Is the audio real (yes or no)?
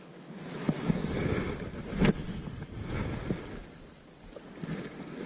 yes